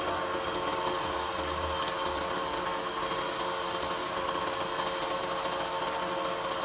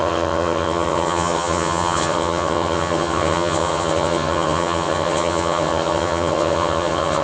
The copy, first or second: second